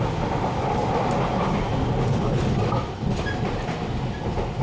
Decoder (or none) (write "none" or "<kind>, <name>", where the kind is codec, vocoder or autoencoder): none